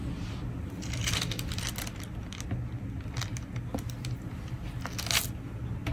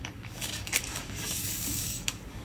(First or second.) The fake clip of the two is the second